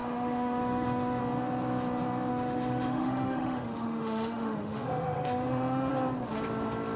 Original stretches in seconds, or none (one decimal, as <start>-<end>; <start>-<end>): 1.2-2.3; 5.9-7.0